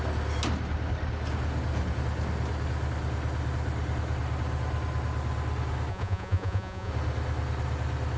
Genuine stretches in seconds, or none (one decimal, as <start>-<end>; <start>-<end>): 0.0-5.9; 6.9-8.2